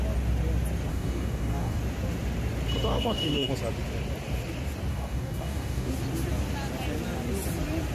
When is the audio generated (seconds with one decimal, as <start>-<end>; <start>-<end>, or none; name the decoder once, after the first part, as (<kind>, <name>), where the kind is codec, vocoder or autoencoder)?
0.9-1.8 (codec, DAC); 2.9-3.5; 4.9-5.9